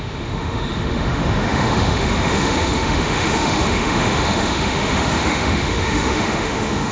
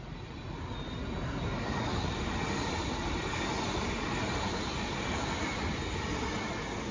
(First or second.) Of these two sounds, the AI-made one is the first